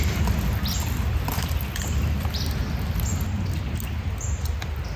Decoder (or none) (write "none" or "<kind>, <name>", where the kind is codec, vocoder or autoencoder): none